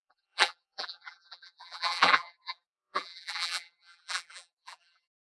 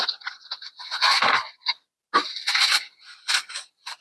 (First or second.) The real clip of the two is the second